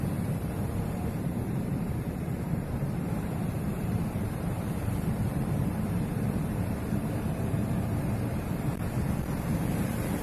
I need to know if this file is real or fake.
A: fake